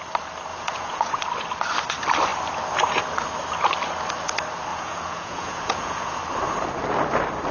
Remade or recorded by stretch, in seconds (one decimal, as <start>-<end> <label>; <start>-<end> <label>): 0.0-0.5 recorded; 0.5-1.2 remade; 1.2-4.7 recorded; 4.7-6.2 remade; 6.2-7.5 recorded